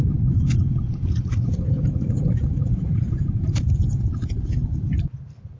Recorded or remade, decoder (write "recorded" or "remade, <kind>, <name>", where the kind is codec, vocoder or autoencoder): remade, vocoder, BigVGAN v2